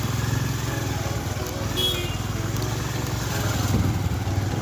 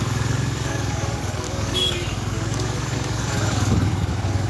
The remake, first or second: second